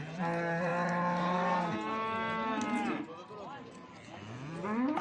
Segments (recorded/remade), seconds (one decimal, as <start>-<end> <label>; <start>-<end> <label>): 0.0-5.0 recorded